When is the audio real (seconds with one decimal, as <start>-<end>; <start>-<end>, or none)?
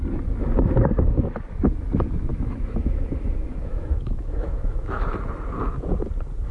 0.0-2.3; 5.0-6.5